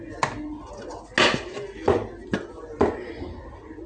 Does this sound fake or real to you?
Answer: real